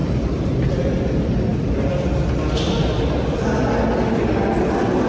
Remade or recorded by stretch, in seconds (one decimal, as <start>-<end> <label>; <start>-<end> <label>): 0.0-1.0 remade; 1.0-5.1 recorded

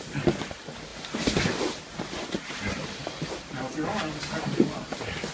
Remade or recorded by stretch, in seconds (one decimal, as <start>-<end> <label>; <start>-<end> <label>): 0.0-5.3 recorded